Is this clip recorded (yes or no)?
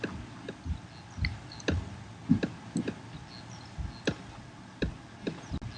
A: yes